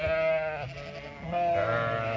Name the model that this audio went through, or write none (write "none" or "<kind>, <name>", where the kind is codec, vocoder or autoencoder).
none